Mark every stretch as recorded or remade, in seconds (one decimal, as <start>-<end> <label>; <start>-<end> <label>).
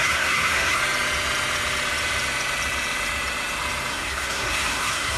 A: 0.0-0.8 remade; 0.8-3.9 recorded; 3.9-5.2 remade